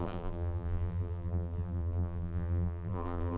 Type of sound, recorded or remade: remade